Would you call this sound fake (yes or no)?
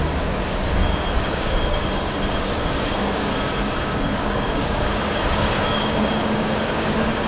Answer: yes